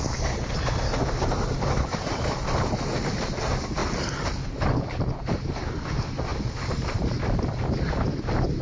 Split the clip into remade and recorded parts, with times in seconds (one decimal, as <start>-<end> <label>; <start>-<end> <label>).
0.0-8.6 remade